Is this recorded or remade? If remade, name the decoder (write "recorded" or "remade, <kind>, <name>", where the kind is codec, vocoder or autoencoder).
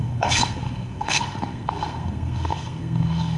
remade, codec, SNAC